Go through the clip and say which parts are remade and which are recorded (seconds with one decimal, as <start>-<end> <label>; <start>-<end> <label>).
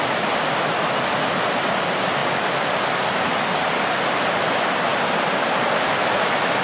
0.0-6.6 recorded